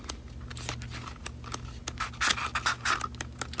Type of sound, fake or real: real